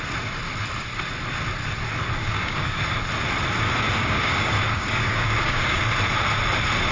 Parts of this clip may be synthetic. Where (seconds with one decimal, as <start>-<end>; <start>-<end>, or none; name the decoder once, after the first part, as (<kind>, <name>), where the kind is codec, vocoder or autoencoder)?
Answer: 2.2-2.8 (codec, DAC); 4.0-5.8